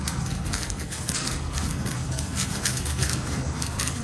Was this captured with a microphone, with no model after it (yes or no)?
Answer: no